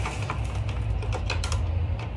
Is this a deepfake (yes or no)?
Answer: no